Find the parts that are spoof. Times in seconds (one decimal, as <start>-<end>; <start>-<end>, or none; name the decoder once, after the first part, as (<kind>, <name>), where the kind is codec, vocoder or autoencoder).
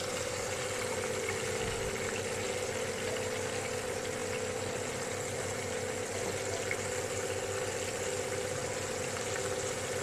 none